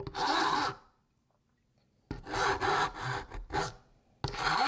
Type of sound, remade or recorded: recorded